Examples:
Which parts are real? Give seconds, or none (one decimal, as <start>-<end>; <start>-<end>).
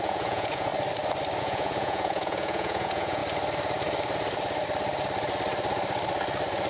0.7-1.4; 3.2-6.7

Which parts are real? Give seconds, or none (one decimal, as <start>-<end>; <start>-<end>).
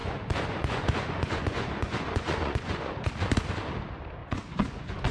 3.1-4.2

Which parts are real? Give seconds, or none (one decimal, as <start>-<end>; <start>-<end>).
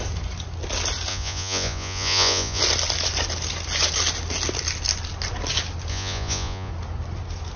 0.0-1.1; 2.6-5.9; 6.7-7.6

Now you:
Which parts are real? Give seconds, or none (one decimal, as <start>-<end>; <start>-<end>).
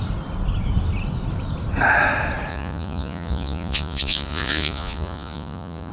0.0-2.5